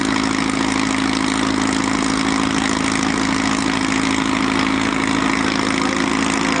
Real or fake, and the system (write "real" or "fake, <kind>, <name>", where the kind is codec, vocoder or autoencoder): real